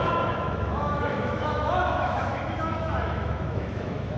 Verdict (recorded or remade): remade